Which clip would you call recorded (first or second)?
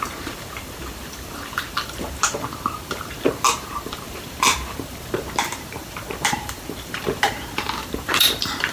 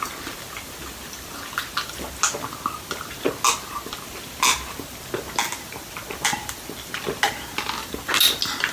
second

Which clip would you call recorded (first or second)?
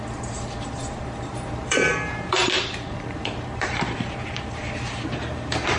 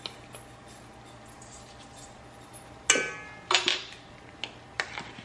second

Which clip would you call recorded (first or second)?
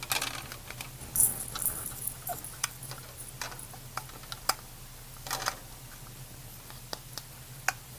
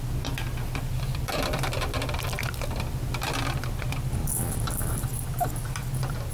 first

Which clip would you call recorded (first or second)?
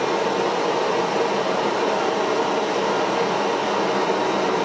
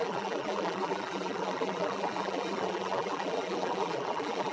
first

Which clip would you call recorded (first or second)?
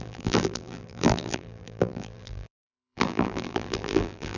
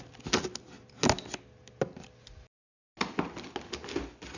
second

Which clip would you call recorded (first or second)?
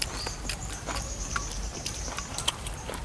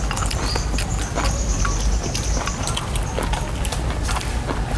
second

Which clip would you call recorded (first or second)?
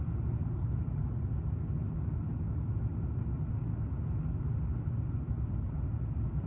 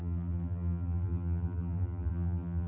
first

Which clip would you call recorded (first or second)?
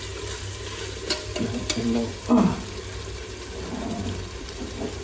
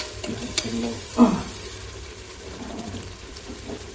first